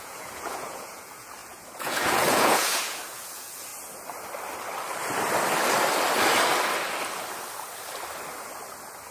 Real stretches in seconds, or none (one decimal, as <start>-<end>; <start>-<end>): 3.7-9.1